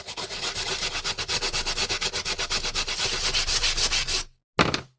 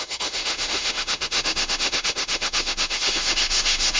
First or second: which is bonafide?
first